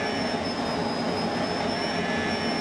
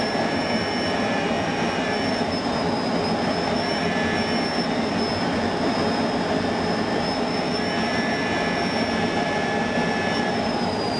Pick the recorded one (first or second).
first